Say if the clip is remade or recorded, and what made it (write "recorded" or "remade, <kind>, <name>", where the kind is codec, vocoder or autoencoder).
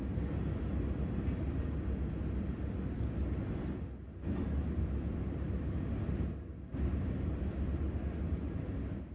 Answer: recorded